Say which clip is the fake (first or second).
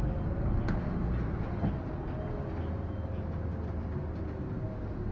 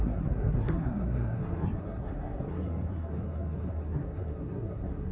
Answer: second